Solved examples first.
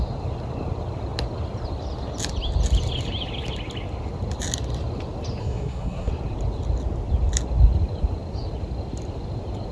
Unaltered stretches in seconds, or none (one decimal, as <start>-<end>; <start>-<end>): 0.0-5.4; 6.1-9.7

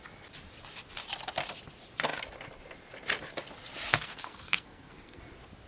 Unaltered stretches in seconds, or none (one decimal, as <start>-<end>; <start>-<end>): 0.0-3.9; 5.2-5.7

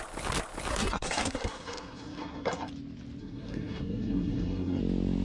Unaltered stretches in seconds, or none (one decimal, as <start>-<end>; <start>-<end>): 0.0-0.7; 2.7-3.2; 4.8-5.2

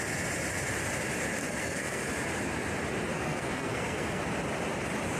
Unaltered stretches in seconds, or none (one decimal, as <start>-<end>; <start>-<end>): 0.0-1.4; 2.0-3.1; 4.2-5.2

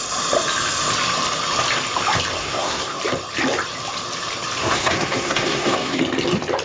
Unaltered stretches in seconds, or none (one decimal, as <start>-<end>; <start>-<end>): 0.0-2.4; 3.0-4.6; 6.0-6.6